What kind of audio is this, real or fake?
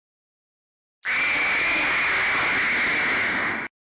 real